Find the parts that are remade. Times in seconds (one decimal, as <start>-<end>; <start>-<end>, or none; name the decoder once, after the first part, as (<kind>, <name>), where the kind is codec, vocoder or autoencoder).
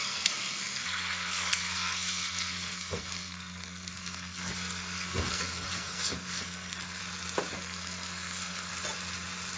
0.0-7.0 (codec, SNAC); 7.5-8.7